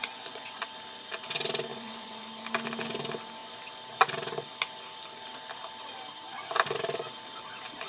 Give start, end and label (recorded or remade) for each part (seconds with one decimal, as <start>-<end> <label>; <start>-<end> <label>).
0.0-0.6 remade; 0.6-1.7 recorded; 1.7-2.2 remade; 2.2-7.9 recorded